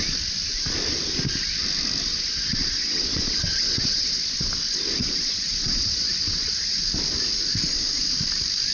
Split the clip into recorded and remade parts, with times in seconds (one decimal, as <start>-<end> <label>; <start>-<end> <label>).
0.0-2.1 recorded; 2.1-4.5 remade; 4.5-5.0 recorded; 5.0-6.8 remade; 6.8-8.7 recorded